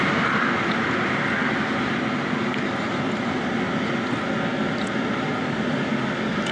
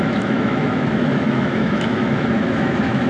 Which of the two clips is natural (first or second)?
first